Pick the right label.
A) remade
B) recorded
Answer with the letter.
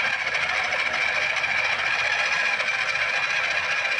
B